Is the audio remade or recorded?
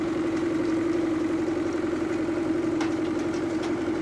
remade